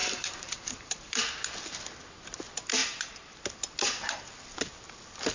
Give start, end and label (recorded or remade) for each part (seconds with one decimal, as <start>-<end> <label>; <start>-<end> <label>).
0.0-1.2 remade; 1.2-5.3 recorded